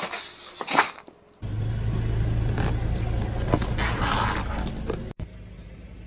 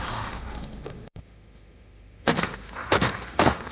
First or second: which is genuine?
first